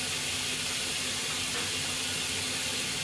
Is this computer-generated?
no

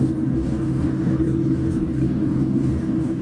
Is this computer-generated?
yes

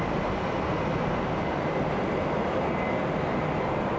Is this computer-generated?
no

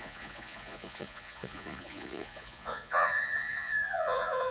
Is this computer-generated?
yes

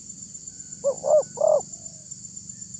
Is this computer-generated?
no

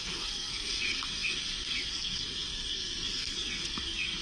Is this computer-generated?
yes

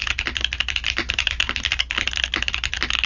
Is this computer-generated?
no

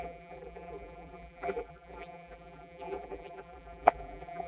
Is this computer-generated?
yes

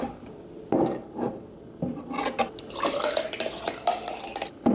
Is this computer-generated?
no